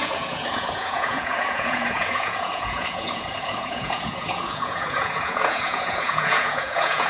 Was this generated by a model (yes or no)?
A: yes